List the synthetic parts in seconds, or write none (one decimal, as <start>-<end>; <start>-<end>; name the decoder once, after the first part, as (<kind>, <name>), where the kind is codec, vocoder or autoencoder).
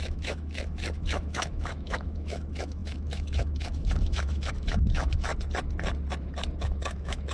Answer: 0.0-5.3 (autoencoder, DAC-VAE); 6.6-7.3